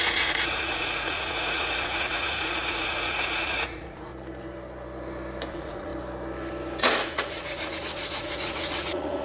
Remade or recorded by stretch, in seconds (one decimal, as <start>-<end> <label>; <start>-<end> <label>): 0.0-4.1 remade; 4.1-5.5 recorded; 5.5-5.9 remade; 5.9-6.8 recorded; 6.8-9.2 remade